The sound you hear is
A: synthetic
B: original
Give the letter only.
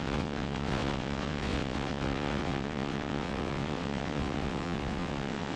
A